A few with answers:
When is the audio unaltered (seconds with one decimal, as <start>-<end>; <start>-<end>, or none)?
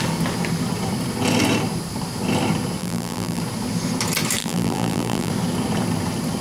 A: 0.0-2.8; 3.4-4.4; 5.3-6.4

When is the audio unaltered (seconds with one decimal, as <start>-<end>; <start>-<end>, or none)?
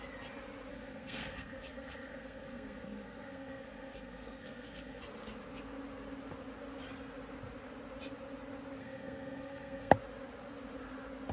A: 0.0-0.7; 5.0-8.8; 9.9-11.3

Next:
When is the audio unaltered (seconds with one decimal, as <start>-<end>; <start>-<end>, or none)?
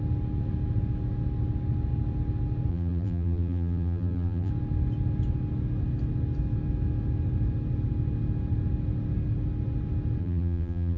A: 0.0-2.7; 4.5-10.2